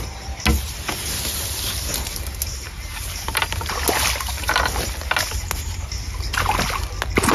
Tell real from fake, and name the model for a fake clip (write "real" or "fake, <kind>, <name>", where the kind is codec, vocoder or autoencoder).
real